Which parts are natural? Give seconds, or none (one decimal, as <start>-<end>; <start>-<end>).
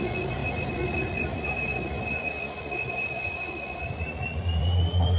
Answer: none